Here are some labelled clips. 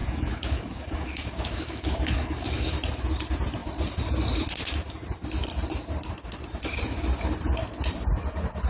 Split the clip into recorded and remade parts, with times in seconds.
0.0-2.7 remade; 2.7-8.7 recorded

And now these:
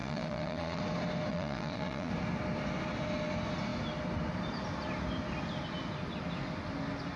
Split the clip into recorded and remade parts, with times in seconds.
0.0-0.8 remade; 0.8-1.3 recorded; 1.3-2.1 remade; 2.1-7.2 recorded

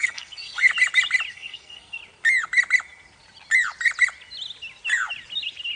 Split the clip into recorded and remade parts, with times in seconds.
0.0-0.7 remade; 0.7-1.3 recorded; 1.3-2.0 remade; 2.0-5.8 recorded

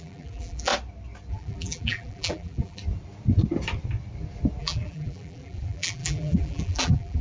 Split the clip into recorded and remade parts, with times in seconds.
0.0-0.7 remade; 0.7-1.3 recorded; 1.3-2.8 remade; 2.8-4.6 recorded; 4.6-7.2 remade

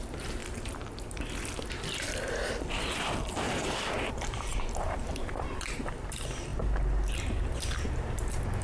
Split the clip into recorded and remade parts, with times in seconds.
0.0-0.4 remade; 0.4-3.0 recorded; 3.0-8.6 remade

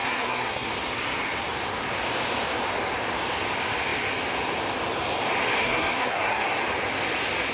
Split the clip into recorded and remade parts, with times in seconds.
0.0-0.7 remade; 0.7-5.6 recorded; 5.6-6.6 remade; 6.6-7.5 recorded